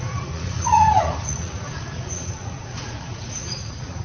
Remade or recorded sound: remade